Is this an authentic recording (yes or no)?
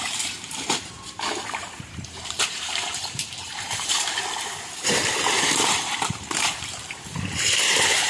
no